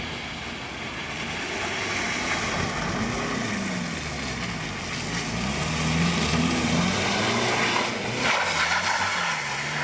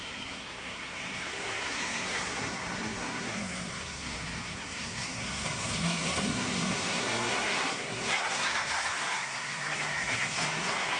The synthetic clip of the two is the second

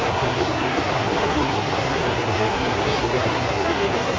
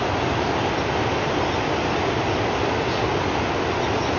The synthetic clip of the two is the first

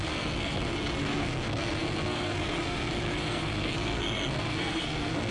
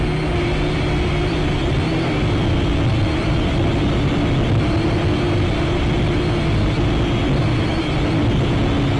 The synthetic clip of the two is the first